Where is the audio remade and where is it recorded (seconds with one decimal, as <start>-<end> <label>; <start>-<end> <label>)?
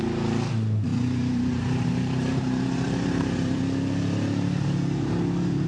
0.0-0.9 recorded; 0.9-3.6 remade; 3.6-5.7 recorded